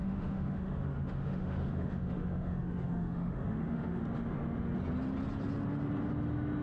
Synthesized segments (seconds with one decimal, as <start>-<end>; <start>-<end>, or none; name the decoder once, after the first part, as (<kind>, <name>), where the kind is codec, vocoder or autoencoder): 0.0-4.0 (autoencoder, DAC-VAE)